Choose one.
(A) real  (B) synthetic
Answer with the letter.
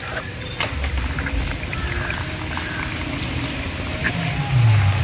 A